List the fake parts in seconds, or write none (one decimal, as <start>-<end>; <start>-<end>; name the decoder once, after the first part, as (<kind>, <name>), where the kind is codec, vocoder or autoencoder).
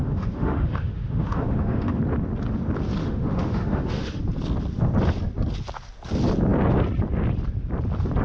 0.0-2.0 (autoencoder, DAC-VAE); 3.0-4.2